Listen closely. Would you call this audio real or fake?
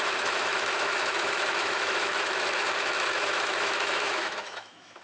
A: fake